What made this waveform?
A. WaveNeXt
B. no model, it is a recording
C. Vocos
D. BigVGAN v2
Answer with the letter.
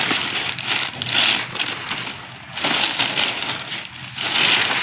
B